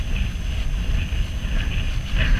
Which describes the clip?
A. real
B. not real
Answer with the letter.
A